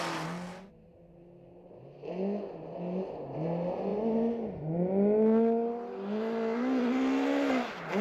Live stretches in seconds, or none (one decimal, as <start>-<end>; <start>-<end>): 0.0-8.0

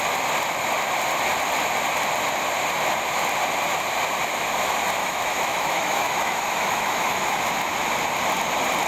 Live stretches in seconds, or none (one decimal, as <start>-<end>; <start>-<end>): 0.0-5.0; 7.5-8.9

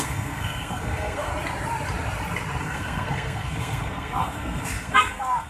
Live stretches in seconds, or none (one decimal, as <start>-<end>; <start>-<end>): 1.3-2.6

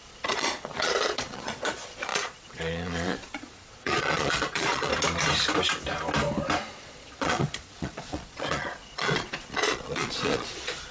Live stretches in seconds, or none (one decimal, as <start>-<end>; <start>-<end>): 4.9-6.7

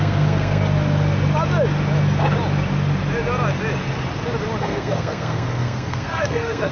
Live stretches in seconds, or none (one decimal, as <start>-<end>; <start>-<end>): 0.6-4.6

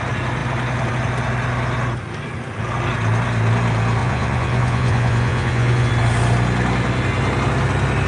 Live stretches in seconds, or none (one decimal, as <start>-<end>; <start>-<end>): 0.0-4.0; 5.9-8.1